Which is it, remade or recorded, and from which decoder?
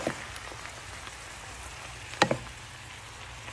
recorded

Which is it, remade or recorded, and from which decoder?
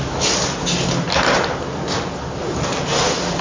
recorded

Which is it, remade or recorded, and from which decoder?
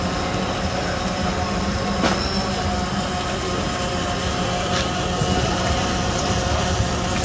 recorded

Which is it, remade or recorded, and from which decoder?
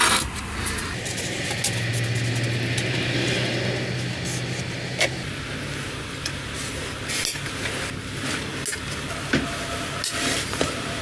recorded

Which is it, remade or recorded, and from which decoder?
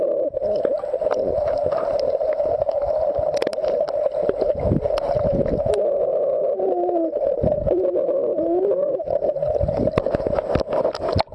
recorded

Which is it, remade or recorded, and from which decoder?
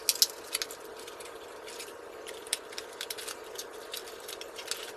recorded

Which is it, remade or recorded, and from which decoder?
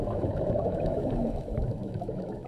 remade, autoencoder, DAC-VAE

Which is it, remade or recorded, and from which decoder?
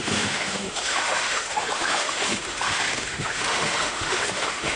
remade, autoencoder, DAC-VAE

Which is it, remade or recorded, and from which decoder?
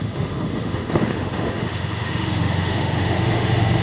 remade, autoencoder, DAC-VAE